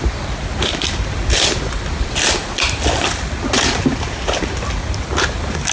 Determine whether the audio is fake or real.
real